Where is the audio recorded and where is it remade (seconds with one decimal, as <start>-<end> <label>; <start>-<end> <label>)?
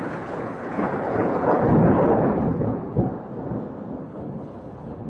0.0-3.1 remade; 3.1-4.0 recorded; 4.0-5.1 remade